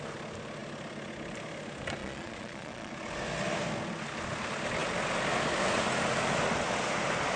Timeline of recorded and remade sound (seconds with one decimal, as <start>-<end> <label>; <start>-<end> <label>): 0.0-2.0 recorded; 2.0-2.9 remade; 2.9-7.4 recorded